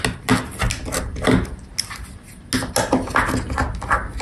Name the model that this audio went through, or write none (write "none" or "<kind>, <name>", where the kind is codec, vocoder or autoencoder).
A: none